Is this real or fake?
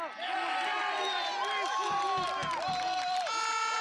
real